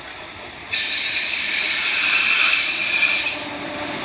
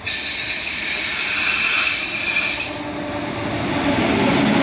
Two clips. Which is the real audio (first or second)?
second